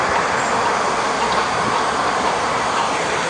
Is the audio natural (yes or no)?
yes